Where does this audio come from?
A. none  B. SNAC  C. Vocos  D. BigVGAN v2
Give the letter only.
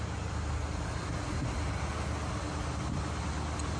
A